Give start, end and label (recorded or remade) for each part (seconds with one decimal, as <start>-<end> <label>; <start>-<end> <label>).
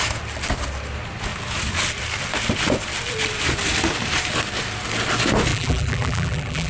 0.0-5.5 recorded; 5.5-6.7 remade